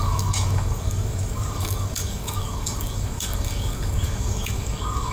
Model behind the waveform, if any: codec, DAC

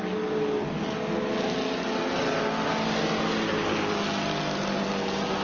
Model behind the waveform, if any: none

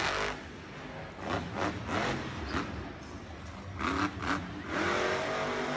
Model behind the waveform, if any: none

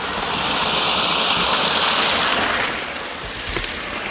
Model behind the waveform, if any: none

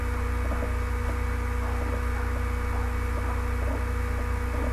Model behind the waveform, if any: none